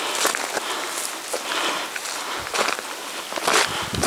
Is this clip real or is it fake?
real